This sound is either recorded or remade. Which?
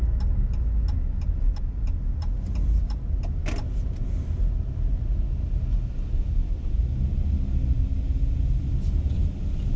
recorded